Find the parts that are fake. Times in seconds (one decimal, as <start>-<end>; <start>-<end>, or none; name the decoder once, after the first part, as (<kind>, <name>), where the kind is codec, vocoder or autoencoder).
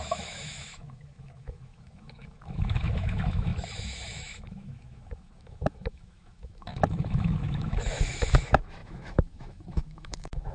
0.0-10.5 (autoencoder, DAC-VAE)